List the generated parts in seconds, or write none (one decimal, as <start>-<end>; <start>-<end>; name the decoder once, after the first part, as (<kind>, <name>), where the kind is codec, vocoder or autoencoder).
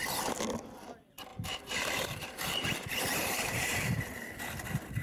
1.3-4.3 (vocoder, BigVGAN v2)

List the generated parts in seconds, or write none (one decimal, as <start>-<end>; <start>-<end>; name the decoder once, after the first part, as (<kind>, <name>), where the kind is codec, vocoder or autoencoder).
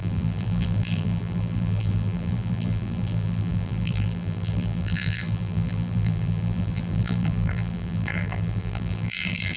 0.0-9.6 (vocoder, BigVGAN v2)